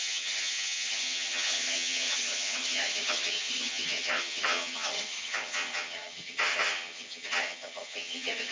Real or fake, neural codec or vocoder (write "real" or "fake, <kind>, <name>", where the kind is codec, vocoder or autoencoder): fake, vocoder, HiFi-GAN